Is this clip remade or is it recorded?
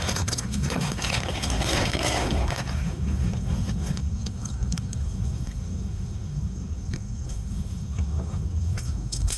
remade